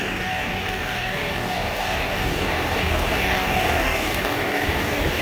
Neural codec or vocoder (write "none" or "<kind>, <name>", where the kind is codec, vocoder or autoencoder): codec, DAC